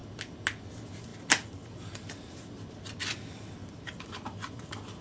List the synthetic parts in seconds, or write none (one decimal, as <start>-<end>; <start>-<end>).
none